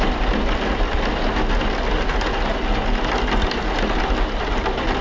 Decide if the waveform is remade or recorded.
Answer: recorded